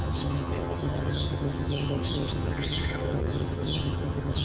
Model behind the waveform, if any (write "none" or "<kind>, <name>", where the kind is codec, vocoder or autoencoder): vocoder, HiFi-GAN